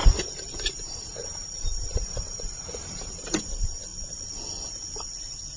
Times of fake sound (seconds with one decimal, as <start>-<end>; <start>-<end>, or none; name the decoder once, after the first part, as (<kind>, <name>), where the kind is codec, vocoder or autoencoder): 0.0-3.4 (vocoder, BigVGAN v2)